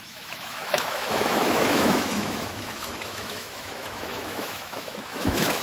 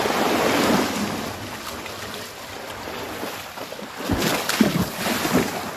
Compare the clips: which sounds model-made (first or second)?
first